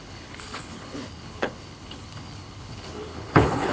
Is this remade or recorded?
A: remade